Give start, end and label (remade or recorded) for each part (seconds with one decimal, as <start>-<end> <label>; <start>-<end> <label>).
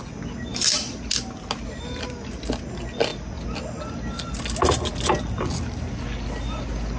0.0-7.0 recorded